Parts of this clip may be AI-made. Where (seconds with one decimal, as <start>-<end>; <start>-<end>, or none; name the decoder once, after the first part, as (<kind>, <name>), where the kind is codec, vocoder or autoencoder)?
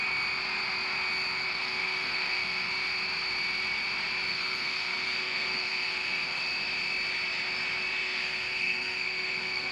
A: 1.5-2.7 (codec, SNAC); 4.3-6.4; 7.9-9.7